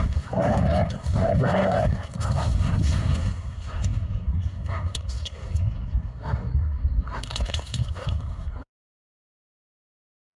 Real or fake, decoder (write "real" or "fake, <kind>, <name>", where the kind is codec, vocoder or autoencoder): fake, codec, SNAC